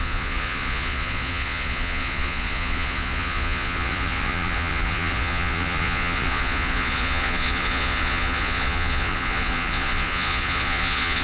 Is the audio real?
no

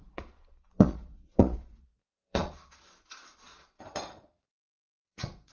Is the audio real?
no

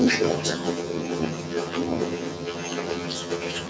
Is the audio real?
no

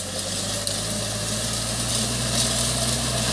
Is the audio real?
yes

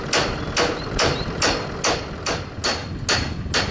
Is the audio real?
yes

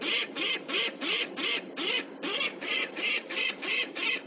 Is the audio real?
no